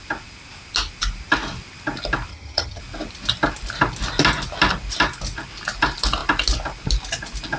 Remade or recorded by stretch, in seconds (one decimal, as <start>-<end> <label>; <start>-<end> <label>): 0.0-2.3 recorded; 2.3-2.8 remade; 2.8-7.6 recorded